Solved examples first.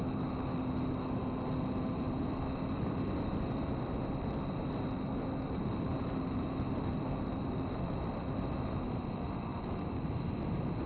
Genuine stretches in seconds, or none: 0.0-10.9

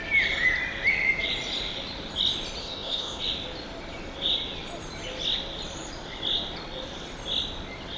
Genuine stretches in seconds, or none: 0.0-2.6; 3.2-8.0

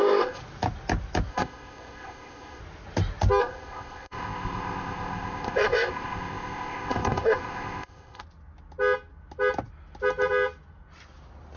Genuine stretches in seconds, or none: 0.4-1.3; 2.6-3.4; 8.2-11.6

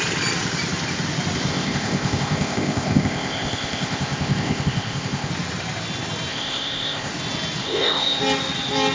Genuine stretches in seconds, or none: 0.0-1.5; 5.3-6.3; 7.1-7.6; 8.2-8.9

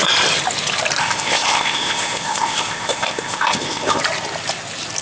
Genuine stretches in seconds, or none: 0.0-1.0; 4.0-5.0